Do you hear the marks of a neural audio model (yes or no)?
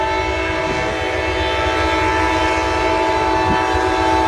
no